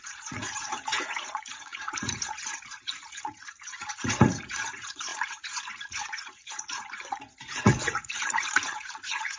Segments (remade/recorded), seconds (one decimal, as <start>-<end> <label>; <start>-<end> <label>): 0.0-9.4 remade